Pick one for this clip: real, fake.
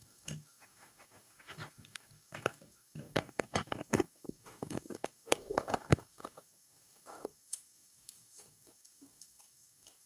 fake